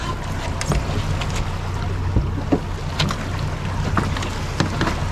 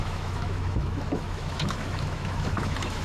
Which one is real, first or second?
first